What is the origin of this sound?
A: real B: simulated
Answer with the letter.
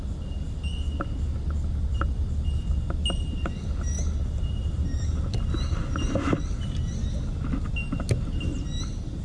A